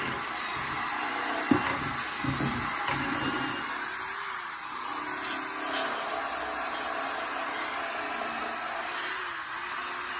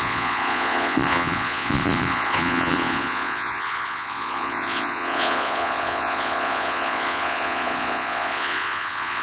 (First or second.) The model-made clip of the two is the second